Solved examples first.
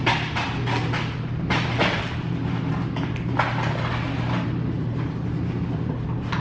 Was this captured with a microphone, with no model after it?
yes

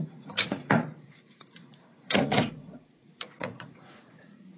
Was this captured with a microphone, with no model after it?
no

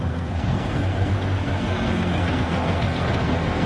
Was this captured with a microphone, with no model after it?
no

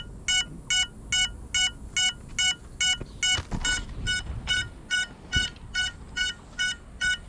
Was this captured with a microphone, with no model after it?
yes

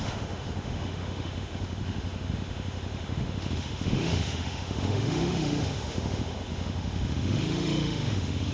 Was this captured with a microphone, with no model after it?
no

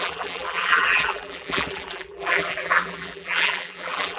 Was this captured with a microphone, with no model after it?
no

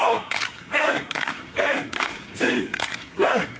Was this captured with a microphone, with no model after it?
no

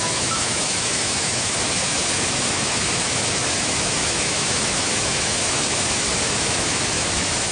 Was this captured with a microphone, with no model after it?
no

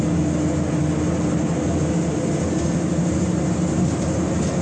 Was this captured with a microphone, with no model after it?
yes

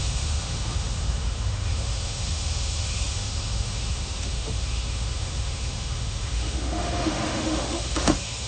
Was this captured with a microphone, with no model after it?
no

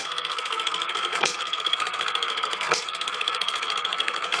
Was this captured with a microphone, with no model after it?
no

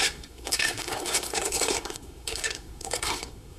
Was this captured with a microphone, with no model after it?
no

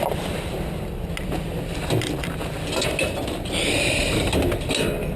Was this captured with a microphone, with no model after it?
yes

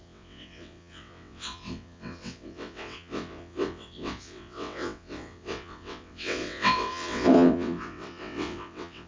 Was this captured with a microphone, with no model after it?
no